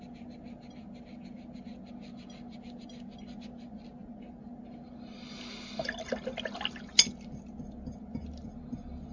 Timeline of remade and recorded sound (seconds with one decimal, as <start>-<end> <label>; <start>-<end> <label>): 0.0-9.1 recorded